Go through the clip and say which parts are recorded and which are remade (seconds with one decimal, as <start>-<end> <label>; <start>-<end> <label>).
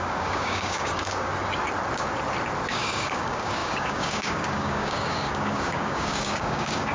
0.0-1.3 remade; 1.3-2.7 recorded; 2.7-6.9 remade